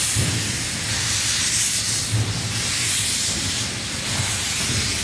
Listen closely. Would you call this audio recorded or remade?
recorded